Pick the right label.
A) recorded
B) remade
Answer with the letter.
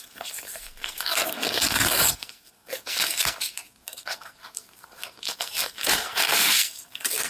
B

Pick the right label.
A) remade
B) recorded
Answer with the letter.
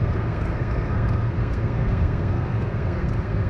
A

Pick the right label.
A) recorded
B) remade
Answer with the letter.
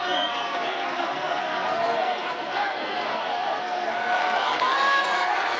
B